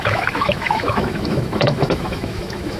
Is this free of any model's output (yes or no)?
no